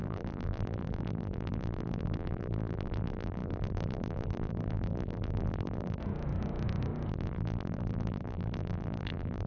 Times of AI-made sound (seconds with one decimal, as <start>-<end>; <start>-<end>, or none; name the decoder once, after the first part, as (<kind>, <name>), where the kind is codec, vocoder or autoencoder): 0.0-6.0 (vocoder, BigVGAN v2); 7.1-9.5